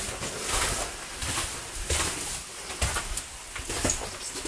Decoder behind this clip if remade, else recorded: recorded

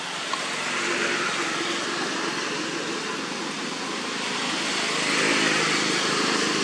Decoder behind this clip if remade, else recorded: recorded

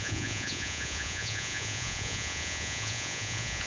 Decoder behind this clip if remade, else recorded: remade, vocoder, Vocos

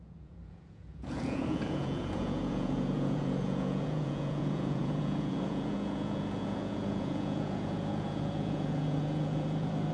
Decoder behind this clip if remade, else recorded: remade, vocoder, Vocos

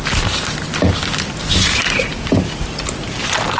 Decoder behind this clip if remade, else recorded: recorded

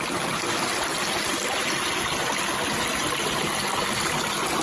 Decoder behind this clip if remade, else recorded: recorded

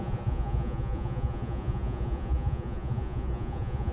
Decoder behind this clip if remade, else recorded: remade, vocoder, Vocos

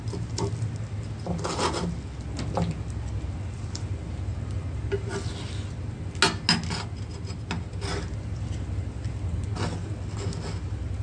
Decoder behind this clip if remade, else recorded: recorded